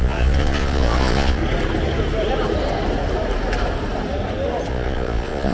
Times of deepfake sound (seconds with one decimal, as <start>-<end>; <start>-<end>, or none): 0.0-1.4; 4.7-5.5